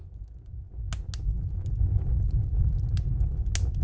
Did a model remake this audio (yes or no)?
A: no